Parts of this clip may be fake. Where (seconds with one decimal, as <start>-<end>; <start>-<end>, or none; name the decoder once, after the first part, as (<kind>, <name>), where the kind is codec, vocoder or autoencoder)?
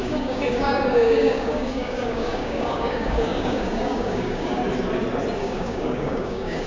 0.0-4.6 (codec, DAC); 5.4-6.7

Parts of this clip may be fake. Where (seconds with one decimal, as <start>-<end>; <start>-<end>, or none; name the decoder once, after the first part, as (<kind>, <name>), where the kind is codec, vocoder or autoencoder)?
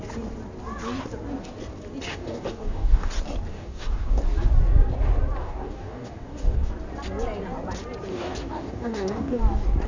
2.1-3.1 (codec, DAC); 3.5-4.2; 5.4-6.7; 8.1-9.4